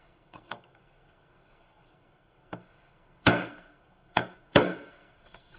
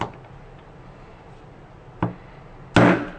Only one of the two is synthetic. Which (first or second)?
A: first